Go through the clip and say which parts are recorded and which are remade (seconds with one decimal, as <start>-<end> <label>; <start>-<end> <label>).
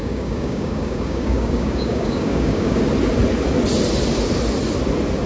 0.0-2.8 remade; 2.8-5.3 recorded